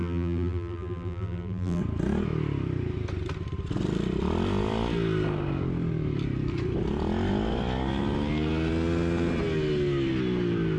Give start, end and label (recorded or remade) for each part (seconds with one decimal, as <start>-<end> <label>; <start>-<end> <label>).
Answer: 0.0-1.8 remade; 1.8-10.8 recorded